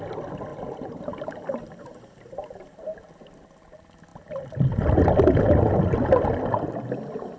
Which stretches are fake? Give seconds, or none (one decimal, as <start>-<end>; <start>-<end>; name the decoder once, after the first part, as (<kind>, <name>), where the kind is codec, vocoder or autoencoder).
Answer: 0.5-2.6 (vocoder, BigVGAN v2)

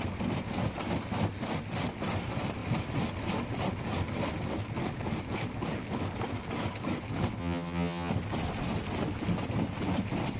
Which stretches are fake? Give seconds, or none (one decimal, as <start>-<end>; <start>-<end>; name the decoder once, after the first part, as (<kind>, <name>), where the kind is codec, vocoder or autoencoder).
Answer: 7.4-8.1 (vocoder, HiFi-GAN)

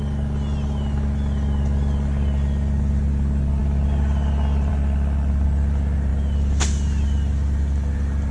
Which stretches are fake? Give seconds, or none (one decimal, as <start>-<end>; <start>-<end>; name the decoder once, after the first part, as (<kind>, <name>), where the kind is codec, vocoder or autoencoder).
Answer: none

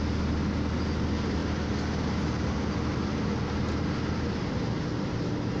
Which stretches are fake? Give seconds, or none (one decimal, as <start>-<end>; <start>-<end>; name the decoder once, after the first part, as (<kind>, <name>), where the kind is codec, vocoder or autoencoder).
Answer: none

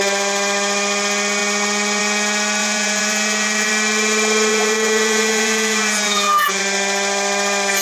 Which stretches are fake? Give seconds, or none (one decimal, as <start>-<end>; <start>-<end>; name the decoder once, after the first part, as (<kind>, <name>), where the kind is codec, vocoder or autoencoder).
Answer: 2.6-3.7 (vocoder, Vocos); 4.5-6.6

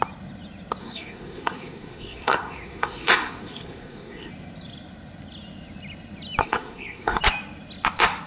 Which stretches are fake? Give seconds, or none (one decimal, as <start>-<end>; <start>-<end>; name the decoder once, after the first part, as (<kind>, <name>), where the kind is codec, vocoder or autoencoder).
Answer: 0.8-4.3 (codec, SNAC); 6.4-7.2

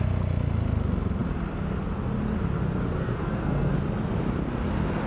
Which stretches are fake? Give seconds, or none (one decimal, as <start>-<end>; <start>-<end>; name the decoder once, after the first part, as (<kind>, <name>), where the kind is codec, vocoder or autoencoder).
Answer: 3.0-3.7 (codec, SNAC)